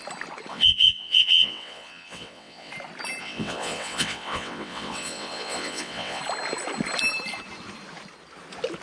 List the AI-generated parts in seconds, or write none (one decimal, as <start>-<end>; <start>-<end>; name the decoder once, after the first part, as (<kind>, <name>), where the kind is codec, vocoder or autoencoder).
0.5-2.7 (vocoder, WaveNeXt); 3.2-6.2